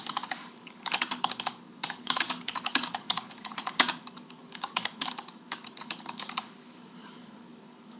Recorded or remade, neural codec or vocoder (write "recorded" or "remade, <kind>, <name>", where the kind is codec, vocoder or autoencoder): remade, codec, DAC